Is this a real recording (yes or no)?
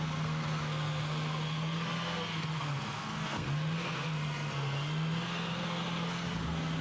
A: no